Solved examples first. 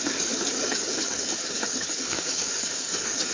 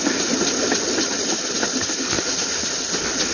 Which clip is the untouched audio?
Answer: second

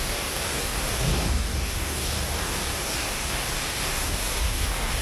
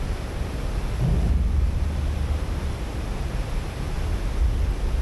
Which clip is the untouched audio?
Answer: second